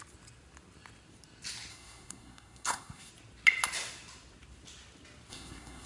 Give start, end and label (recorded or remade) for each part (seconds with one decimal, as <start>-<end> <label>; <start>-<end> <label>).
0.0-1.7 recorded; 1.7-3.1 remade; 3.1-5.3 recorded; 5.3-5.9 remade